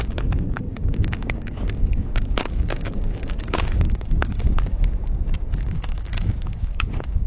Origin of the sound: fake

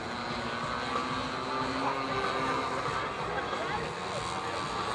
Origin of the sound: real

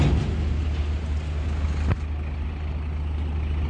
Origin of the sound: real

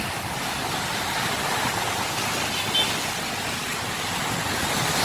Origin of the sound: real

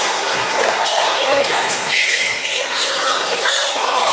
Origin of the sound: fake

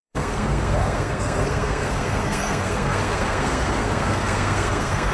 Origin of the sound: fake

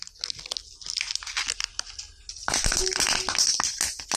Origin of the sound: real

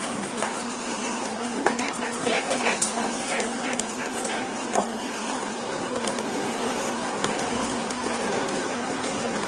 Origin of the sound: fake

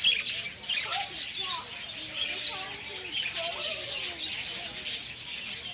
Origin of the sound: real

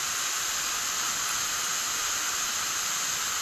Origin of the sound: real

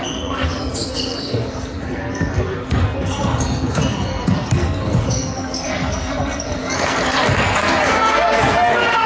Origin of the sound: fake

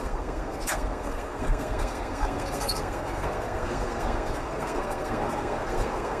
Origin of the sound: fake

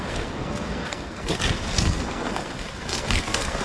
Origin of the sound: fake